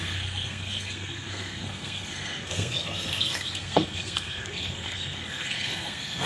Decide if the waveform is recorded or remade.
remade